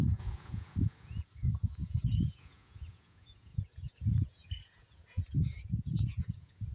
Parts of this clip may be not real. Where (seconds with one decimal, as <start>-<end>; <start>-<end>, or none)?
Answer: 0.0-6.7